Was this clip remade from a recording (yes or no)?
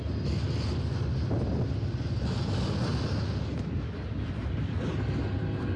no